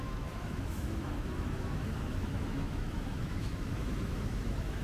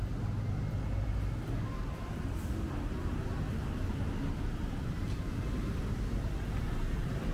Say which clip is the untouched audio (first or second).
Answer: second